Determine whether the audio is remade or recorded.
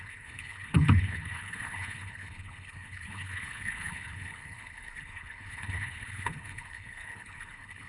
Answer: remade